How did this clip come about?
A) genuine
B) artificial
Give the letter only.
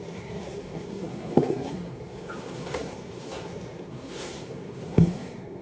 B